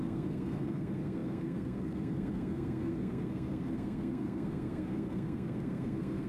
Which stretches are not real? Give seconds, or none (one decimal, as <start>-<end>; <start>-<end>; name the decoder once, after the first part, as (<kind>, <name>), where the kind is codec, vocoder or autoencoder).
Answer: 0.0-6.3 (codec, SNAC)